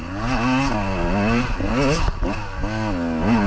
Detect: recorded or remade recorded